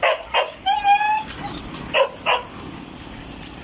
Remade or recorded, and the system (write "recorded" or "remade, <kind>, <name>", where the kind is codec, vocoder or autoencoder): recorded